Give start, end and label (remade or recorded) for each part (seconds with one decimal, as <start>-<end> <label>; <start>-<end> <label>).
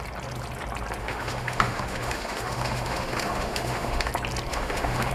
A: 0.0-1.0 recorded; 1.0-4.1 remade; 4.1-4.5 recorded; 4.5-5.1 remade